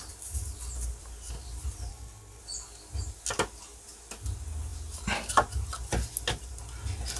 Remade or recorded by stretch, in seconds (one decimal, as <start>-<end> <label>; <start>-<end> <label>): 0.0-1.9 recorded; 1.9-2.4 remade; 2.4-7.2 recorded